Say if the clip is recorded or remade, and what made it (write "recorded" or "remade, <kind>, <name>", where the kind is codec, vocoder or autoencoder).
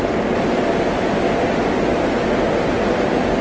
recorded